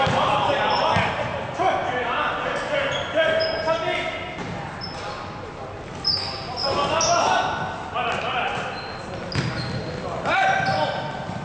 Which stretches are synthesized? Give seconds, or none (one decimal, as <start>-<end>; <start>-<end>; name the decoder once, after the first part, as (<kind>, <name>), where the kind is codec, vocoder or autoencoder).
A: none